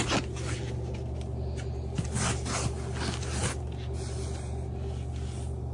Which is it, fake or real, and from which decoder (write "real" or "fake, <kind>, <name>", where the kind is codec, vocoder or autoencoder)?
real